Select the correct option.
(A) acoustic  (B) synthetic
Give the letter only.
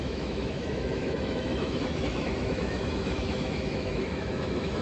B